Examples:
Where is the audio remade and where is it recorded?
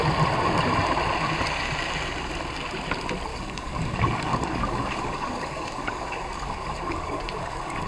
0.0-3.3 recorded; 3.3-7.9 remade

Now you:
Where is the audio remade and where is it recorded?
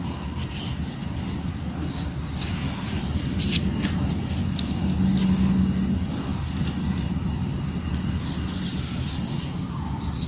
0.0-10.3 recorded